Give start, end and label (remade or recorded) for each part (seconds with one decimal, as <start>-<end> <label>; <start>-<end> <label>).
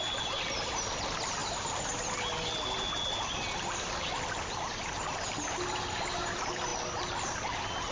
0.0-7.9 recorded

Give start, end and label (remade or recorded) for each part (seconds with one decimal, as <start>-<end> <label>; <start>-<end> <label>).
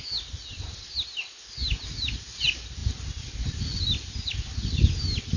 0.0-5.4 recorded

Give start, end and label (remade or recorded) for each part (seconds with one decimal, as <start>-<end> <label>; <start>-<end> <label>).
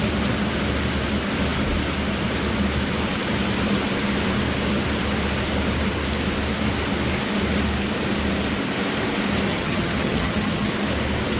0.0-9.5 recorded; 9.5-10.7 remade; 10.7-11.4 recorded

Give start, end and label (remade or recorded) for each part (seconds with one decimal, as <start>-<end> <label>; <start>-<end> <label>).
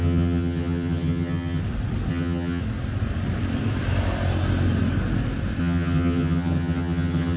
0.0-1.6 remade; 1.6-2.1 recorded; 2.1-2.6 remade; 2.6-5.6 recorded; 5.6-7.4 remade